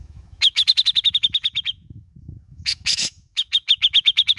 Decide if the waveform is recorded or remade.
remade